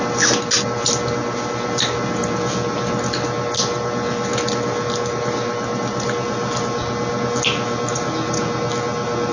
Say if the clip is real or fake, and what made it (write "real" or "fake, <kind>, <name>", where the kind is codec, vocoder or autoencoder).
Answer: real